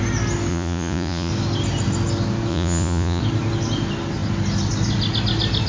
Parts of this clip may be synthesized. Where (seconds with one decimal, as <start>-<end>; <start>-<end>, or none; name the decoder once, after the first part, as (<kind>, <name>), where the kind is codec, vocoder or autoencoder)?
0.5-1.3 (vocoder, Vocos); 2.5-3.2